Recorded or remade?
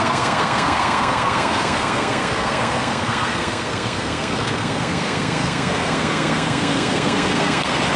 remade